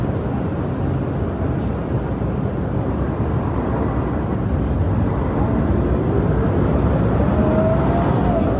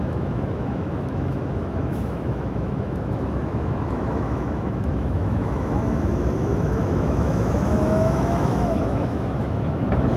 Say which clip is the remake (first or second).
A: second